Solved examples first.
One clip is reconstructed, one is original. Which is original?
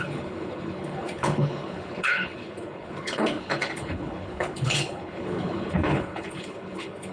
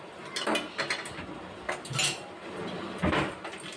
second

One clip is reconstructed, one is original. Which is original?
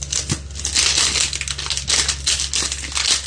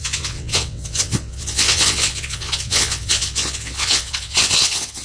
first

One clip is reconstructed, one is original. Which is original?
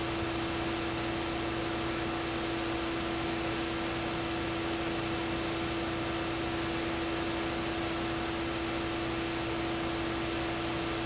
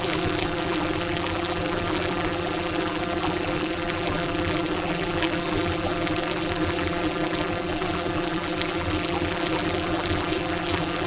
first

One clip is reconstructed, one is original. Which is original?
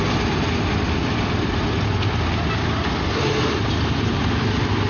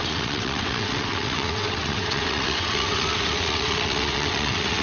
first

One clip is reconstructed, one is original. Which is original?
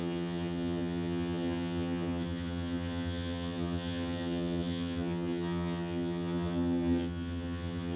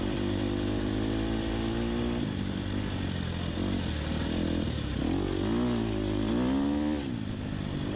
second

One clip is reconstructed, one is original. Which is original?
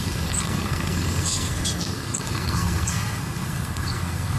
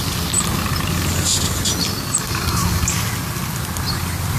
second